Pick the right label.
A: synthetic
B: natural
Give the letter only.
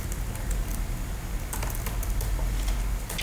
B